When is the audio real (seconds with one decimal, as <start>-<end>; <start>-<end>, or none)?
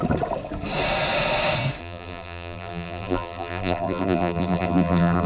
0.0-1.8